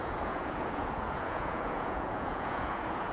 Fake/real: fake